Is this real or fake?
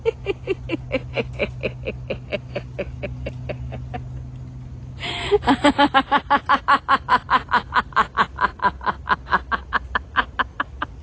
real